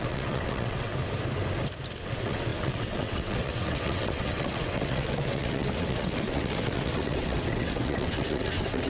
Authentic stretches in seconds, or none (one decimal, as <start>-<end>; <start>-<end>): 0.9-2.0